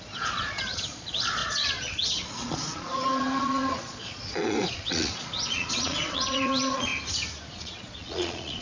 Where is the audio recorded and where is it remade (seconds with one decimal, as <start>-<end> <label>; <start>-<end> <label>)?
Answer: 0.0-6.9 remade; 6.9-7.5 recorded; 7.5-8.6 remade